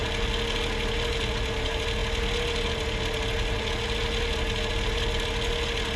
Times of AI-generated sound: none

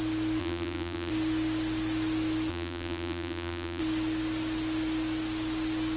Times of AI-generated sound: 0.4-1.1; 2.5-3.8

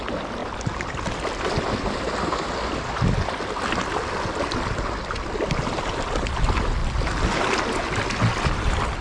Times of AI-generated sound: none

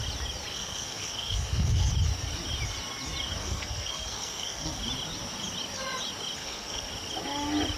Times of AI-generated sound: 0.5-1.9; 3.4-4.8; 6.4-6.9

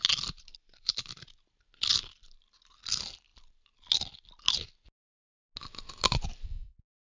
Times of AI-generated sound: none

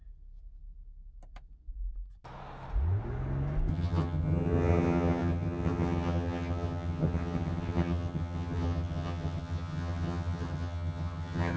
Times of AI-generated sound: 3.7-11.6

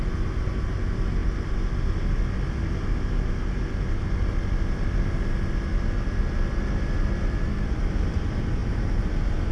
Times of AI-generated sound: none